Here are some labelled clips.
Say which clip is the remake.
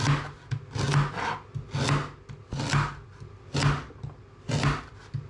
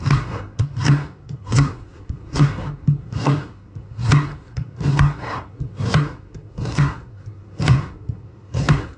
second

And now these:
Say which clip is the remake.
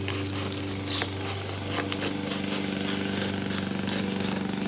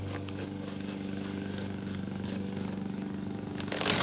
second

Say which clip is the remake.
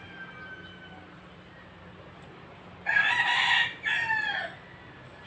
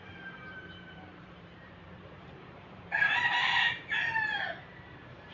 second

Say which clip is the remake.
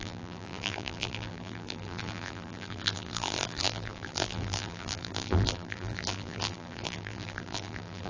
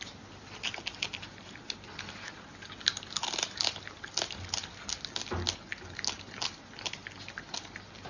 first